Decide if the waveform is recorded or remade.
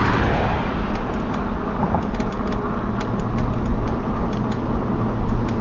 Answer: recorded